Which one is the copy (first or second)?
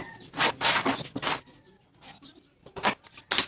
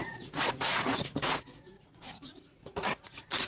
second